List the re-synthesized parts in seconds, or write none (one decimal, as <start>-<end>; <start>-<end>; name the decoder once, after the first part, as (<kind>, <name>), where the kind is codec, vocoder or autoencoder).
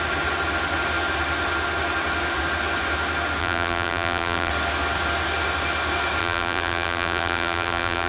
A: 3.4-4.5 (vocoder, BigVGAN v2); 6.2-8.1